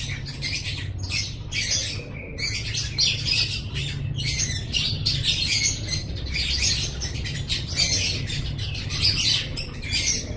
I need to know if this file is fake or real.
real